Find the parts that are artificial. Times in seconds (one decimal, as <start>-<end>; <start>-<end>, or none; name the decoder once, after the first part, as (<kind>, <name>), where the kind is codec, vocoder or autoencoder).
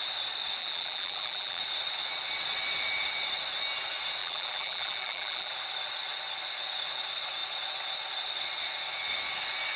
0.6-1.6 (vocoder, BigVGAN v2); 4.2-5.5